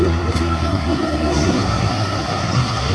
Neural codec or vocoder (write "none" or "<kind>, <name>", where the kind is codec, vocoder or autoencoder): codec, SNAC